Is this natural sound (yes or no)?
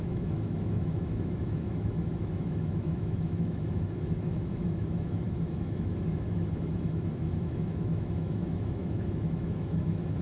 no